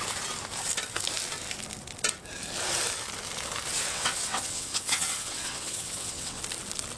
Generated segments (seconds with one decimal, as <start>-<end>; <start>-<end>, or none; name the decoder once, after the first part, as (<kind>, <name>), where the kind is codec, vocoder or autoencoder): 3.9-6.4 (vocoder, WaveNeXt)